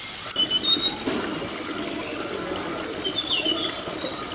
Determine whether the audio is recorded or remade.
recorded